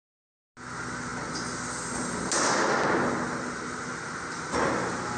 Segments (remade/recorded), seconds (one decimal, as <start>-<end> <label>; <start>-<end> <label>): 0.0-5.2 recorded